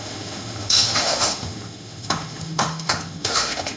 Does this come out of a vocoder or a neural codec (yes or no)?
yes